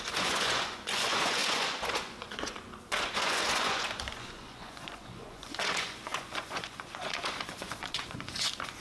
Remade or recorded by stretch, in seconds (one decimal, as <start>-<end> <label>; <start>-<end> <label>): 0.0-8.8 remade